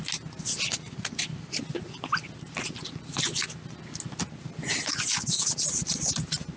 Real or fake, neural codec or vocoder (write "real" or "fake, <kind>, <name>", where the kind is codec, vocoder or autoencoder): real